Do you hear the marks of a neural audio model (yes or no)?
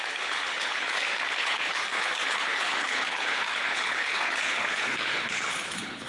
yes